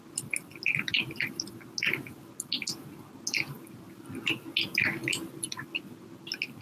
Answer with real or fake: real